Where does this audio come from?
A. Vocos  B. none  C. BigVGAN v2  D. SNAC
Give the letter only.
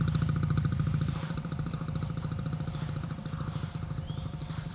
C